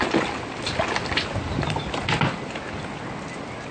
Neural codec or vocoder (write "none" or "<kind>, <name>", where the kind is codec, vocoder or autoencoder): none